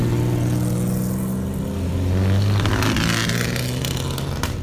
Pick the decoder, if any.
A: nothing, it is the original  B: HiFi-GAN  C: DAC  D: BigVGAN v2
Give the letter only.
A